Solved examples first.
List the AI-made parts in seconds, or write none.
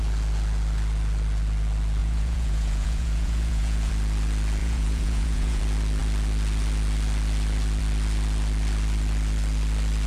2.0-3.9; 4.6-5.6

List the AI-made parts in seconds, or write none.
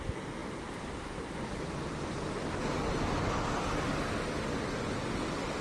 none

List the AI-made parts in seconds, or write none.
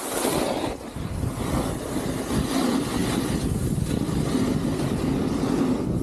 none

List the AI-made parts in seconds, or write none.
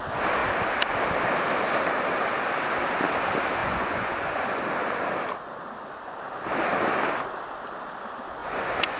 3.6-4.6; 8.4-9.0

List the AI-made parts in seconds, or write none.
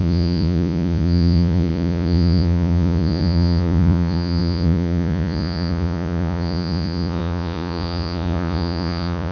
0.0-9.3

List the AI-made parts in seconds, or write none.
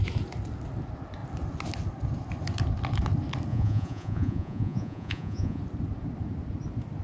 3.5-5.6